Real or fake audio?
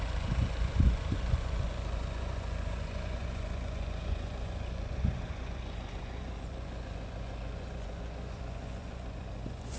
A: fake